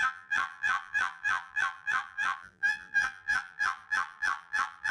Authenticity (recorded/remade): remade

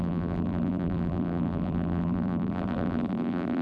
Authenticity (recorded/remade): remade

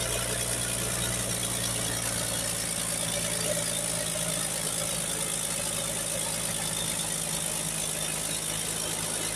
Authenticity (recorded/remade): recorded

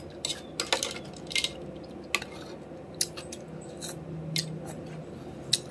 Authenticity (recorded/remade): recorded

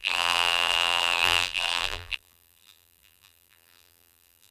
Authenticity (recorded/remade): remade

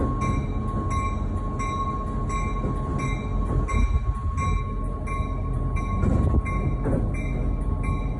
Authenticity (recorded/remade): recorded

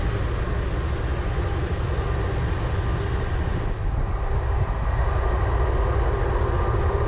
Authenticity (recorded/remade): recorded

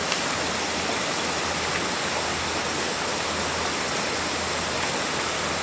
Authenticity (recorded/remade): recorded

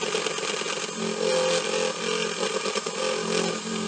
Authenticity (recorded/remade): recorded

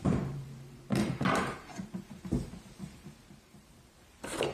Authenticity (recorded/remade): remade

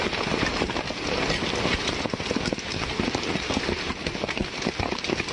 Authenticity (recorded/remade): recorded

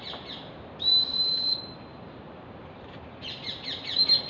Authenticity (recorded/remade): recorded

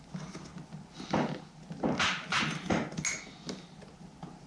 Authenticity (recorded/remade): recorded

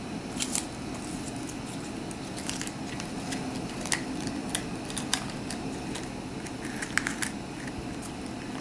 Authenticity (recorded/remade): recorded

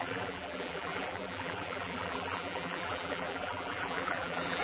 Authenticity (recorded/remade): remade